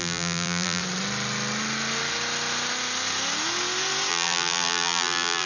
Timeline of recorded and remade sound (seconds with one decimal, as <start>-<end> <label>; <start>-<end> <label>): 0.0-0.8 remade; 0.8-4.1 recorded; 4.1-5.5 remade